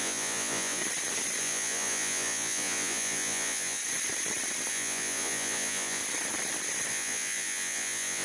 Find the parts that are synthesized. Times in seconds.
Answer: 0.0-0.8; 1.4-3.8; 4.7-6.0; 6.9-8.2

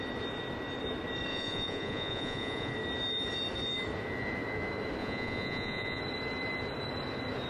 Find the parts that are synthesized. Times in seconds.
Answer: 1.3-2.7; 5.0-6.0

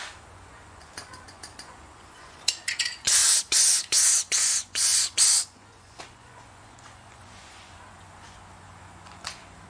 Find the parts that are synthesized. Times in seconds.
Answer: 0.0-9.7

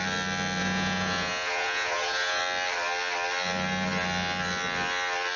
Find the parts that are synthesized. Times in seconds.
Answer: 0.6-2.4

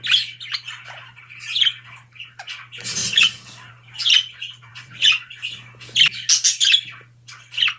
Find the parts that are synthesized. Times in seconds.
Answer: 4.7-5.3